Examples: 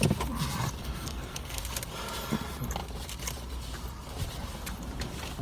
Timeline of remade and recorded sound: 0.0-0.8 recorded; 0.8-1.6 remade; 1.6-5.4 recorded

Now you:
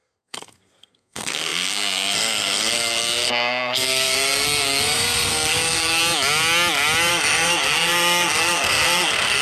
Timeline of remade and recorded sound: 0.0-6.0 remade; 6.0-7.1 recorded; 7.1-9.4 remade

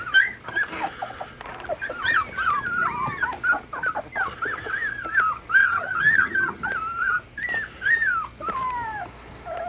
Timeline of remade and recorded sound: 0.0-5.6 recorded; 5.6-6.6 remade; 6.6-9.7 recorded